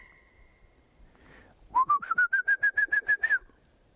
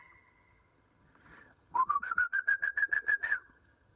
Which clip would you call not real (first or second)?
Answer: second